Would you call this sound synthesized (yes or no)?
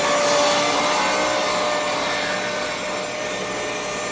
no